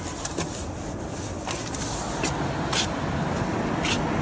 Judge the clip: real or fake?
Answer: real